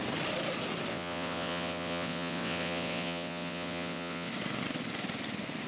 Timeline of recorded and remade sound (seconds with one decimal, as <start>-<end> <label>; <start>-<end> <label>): 0.0-0.9 recorded; 0.9-4.3 remade; 4.3-5.7 recorded